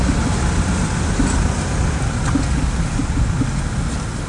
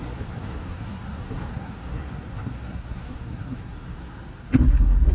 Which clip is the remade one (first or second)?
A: second